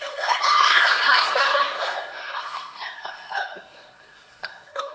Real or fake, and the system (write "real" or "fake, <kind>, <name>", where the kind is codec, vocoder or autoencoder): fake, codec, SNAC